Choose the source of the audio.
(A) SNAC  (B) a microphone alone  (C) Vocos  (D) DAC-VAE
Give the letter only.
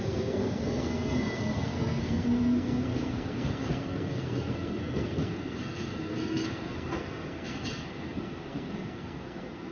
A